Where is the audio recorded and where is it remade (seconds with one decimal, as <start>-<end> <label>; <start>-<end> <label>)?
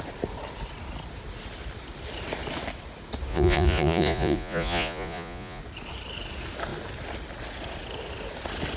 0.0-3.3 recorded; 3.3-5.6 remade; 5.6-8.8 recorded